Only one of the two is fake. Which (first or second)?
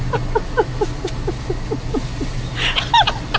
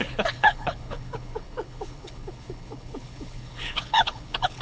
second